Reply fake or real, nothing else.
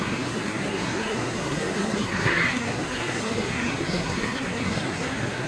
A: fake